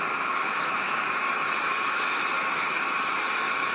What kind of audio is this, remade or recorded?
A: remade